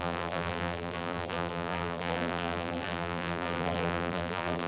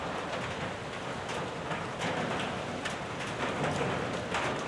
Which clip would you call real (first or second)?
second